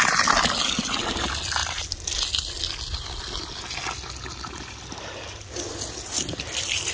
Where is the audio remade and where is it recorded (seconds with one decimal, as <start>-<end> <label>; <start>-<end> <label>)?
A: 0.0-6.9 recorded